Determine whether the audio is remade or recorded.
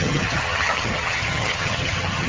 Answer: remade